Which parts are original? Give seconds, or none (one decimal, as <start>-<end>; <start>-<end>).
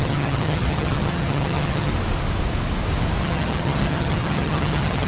1.9-3.2